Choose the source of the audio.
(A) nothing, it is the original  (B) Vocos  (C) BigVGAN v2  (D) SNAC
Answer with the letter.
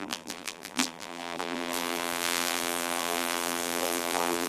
C